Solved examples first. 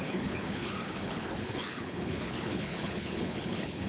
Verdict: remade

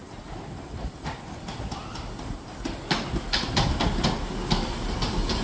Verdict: recorded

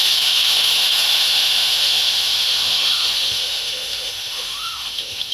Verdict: remade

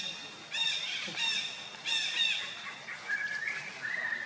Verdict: recorded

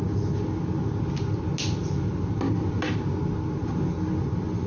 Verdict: recorded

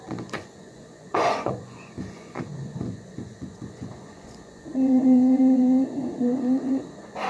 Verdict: remade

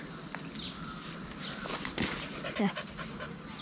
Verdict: recorded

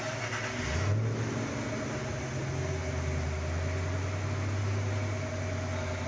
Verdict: recorded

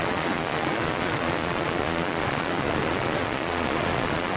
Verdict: remade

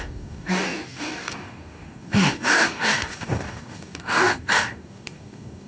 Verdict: remade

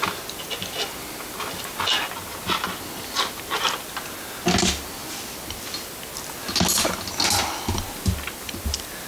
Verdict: recorded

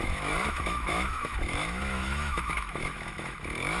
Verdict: remade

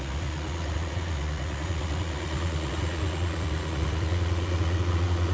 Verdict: remade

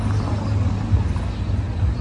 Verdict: recorded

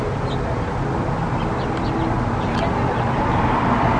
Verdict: recorded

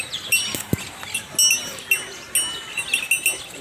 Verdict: recorded